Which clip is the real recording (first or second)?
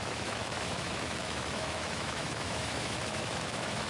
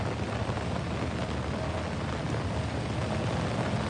second